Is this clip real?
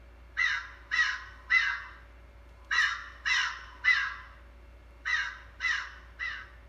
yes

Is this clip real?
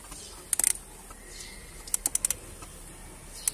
yes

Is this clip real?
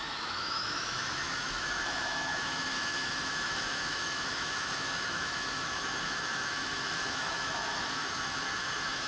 no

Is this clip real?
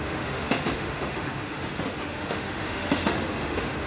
no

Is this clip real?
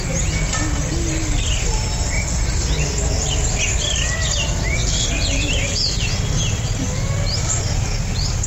yes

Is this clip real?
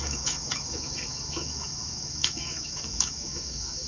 no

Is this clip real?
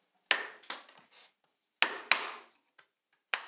yes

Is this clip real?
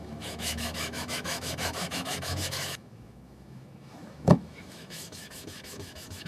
no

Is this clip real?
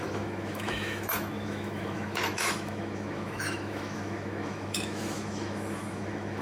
no